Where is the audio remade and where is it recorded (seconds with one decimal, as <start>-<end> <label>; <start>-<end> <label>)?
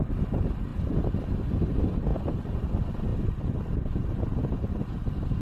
0.0-2.1 recorded; 2.1-2.7 remade; 2.7-5.4 recorded